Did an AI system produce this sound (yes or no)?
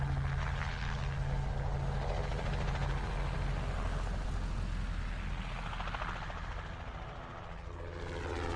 no